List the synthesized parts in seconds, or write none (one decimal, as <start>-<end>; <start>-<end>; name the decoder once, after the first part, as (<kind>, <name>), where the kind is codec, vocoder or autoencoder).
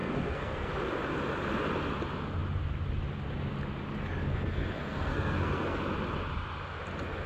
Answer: 0.0-0.7 (codec, SNAC); 4.3-5.8